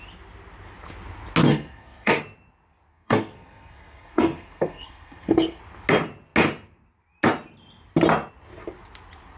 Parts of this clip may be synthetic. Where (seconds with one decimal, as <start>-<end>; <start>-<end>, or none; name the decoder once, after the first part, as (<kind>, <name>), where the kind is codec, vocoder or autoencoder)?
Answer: 1.5-2.2 (codec, SNAC); 2.9-5.6